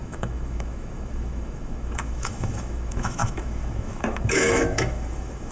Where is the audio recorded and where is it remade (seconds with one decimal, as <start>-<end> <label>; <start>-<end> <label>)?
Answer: 0.0-5.5 remade